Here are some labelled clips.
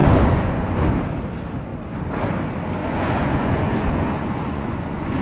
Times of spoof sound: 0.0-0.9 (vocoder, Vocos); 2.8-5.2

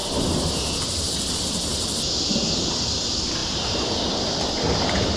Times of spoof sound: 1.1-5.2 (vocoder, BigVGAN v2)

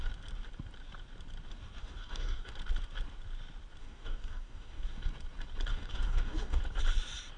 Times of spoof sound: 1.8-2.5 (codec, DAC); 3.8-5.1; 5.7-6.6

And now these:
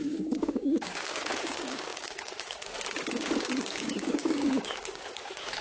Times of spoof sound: 0.0-5.6 (codec, DAC)

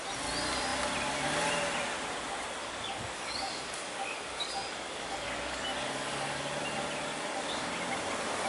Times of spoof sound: 2.6-6.4 (codec, DAC); 7.1-7.7

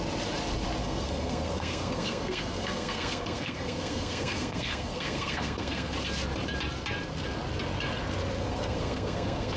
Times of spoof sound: 0.8-5.9 (codec, SNAC); 8.4-9.6

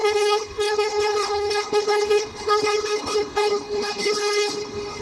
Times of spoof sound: 0.0-5.0 (codec, HILCodec)

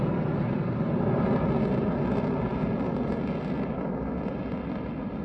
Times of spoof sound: none